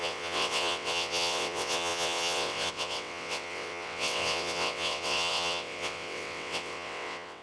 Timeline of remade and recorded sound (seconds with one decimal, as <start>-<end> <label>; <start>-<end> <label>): 0.0-7.4 remade